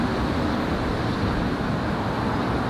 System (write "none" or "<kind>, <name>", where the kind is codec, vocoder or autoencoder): none